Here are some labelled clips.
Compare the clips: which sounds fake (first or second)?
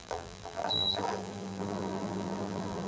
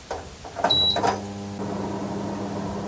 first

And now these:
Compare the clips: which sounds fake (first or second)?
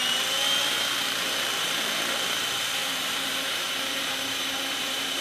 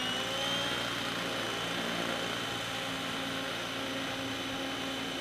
first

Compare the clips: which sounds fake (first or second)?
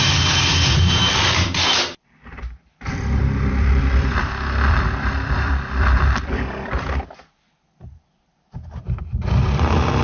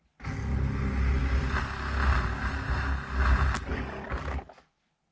first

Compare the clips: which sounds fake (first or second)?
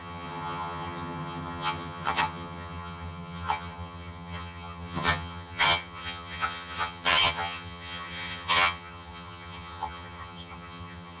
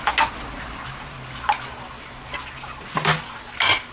first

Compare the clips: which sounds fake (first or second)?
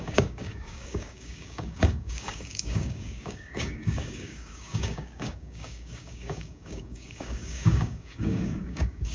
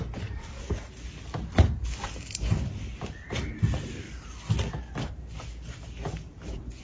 first